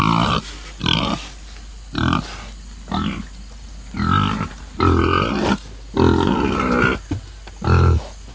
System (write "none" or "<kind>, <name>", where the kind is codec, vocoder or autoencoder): none